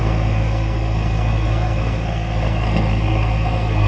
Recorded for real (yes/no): no